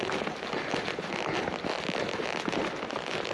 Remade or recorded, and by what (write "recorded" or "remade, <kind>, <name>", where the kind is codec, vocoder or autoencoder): recorded